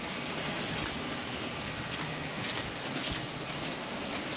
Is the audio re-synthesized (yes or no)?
yes